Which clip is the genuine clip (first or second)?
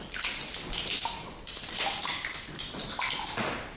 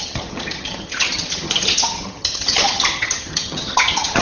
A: first